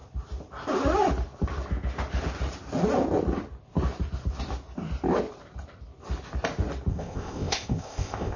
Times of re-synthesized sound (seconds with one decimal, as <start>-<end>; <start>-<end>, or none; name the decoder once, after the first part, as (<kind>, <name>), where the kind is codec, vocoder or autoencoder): 6.9-8.4 (codec, ZipCodec)